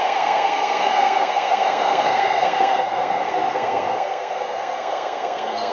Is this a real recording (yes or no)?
no